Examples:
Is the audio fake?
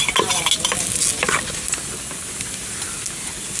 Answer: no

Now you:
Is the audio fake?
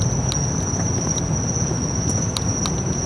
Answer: no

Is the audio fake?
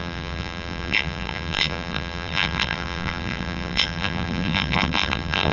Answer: yes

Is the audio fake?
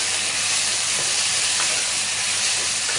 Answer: no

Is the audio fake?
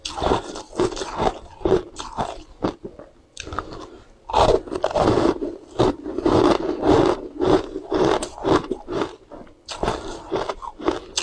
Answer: no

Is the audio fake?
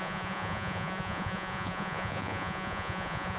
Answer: yes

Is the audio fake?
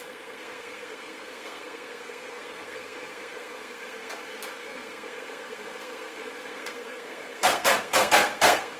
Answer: yes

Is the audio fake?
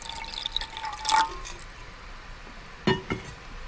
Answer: no